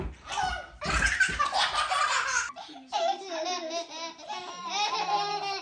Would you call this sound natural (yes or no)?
yes